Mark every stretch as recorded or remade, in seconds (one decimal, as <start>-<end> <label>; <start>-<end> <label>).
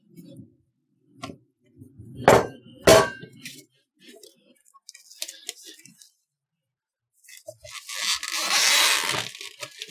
0.0-9.9 recorded